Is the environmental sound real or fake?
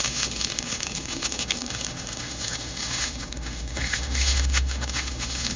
fake